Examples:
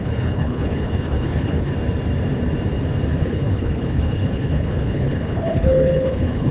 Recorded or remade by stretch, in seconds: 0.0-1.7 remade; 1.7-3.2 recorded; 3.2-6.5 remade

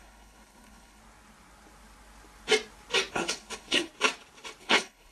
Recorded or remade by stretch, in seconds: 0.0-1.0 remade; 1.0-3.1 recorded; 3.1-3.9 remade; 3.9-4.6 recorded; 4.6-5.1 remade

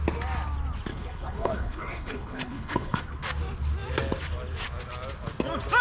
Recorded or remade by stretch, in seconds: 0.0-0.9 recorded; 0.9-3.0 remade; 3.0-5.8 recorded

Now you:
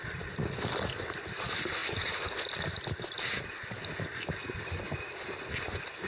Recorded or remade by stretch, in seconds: 0.0-6.1 recorded

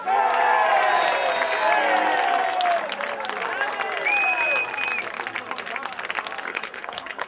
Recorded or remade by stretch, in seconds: 0.0-6.5 recorded; 6.5-7.3 remade